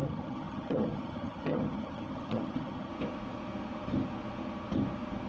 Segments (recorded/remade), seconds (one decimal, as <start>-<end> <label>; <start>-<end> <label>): 0.0-2.9 remade; 2.9-5.3 recorded